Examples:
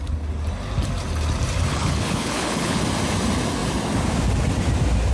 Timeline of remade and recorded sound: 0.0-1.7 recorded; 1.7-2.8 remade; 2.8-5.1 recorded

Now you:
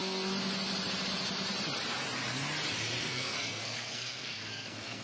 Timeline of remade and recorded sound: 0.0-3.0 recorded; 3.0-5.0 remade

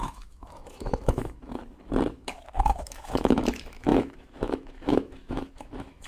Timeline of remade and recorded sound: 0.0-1.6 remade; 1.6-2.1 recorded; 2.1-6.1 remade

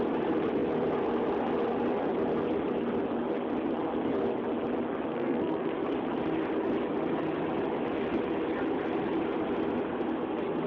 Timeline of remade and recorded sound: 0.0-5.1 recorded; 5.1-5.7 remade; 5.7-10.7 recorded